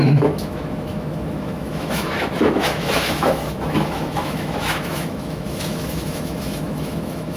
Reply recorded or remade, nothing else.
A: remade